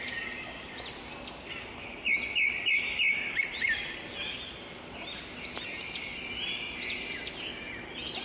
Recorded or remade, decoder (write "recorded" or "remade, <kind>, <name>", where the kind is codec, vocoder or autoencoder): recorded